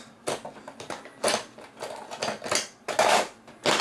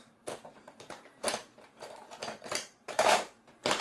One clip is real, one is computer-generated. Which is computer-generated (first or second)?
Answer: second